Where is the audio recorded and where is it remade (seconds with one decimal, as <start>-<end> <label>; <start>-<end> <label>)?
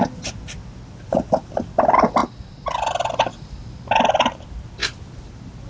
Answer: 0.0-5.7 recorded